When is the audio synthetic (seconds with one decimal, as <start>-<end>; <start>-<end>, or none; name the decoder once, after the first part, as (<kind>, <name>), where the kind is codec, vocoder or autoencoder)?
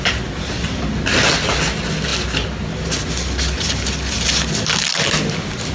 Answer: none